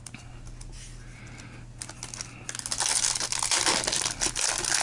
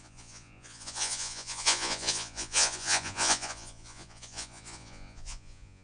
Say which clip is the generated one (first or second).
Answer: second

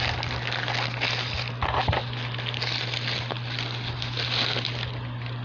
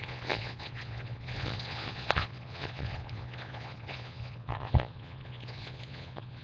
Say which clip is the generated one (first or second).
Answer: second